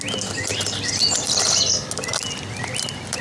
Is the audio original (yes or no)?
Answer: yes